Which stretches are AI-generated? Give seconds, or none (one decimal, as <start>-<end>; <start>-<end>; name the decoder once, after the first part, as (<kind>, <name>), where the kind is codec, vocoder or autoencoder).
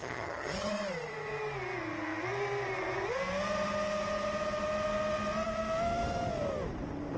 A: 0.0-0.7 (vocoder, HiFi-GAN)